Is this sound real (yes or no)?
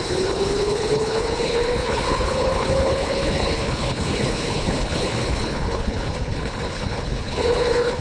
no